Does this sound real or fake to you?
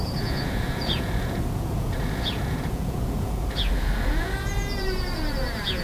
fake